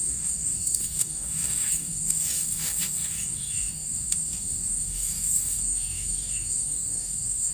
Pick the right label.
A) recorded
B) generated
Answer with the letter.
B